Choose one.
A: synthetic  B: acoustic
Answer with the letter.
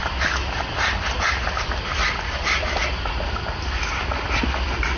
B